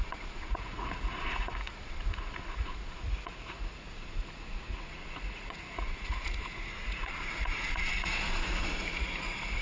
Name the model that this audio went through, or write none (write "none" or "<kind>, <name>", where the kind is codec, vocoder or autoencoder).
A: vocoder, Vocos